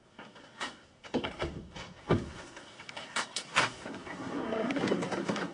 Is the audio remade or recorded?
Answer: remade